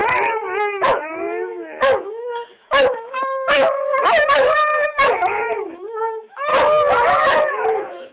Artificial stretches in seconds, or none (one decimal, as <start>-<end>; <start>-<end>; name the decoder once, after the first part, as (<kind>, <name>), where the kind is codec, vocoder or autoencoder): 0.0-6.5 (autoencoder, DAC-VAE); 7.1-8.1